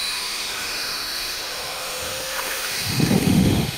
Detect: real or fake fake